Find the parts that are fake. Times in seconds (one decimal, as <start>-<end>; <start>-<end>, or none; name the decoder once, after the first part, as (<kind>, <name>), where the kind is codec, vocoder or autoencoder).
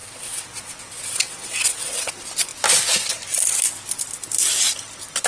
0.0-2.1 (vocoder, WaveNeXt)